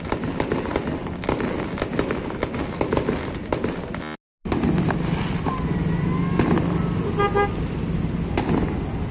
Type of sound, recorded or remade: recorded